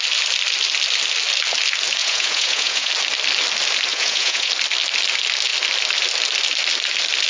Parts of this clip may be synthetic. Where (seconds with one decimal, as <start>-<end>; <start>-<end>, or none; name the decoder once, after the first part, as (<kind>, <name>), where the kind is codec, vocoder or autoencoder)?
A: 2.0-2.9 (vocoder, Vocos); 3.9-4.5

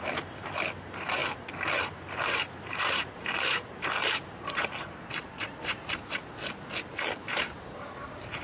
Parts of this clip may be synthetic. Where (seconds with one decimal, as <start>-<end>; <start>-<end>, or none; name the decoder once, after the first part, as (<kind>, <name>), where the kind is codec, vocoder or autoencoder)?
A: 0.0-1.2 (vocoder, BigVGAN v2); 1.8-8.4

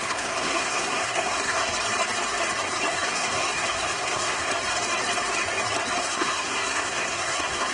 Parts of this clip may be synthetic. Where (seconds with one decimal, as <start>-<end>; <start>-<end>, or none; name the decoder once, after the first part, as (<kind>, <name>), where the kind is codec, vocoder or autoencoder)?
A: 0.0-1.7 (codec, SNAC); 2.9-4.5; 6.0-7.7

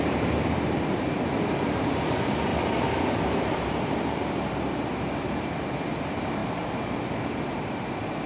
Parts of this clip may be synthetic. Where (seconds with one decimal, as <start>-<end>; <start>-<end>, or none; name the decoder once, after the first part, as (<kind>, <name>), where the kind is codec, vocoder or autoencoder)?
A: 0.0-2.5 (vocoder, BigVGAN v2); 3.1-8.3

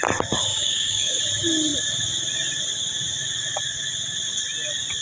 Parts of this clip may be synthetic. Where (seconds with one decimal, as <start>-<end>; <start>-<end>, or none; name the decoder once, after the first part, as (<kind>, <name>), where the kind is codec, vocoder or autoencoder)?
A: 0.5-1.2 (codec, DAC)

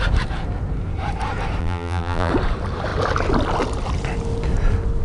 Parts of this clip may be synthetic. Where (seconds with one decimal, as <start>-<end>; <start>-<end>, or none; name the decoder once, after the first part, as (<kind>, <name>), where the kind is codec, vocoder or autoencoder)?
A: 1.6-2.3 (vocoder, BigVGAN v2)

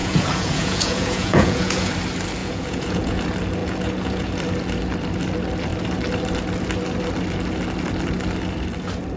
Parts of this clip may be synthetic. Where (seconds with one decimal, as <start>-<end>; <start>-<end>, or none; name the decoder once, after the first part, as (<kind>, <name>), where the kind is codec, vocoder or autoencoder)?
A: 0.0-1.9 (vocoder, Vocos); 2.4-3.2; 3.6-4.3